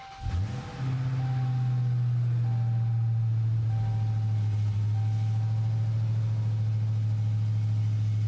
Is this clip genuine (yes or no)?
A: yes